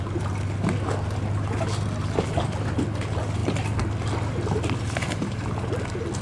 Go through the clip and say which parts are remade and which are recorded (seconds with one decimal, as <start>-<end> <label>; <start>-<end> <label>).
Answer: 0.0-6.2 recorded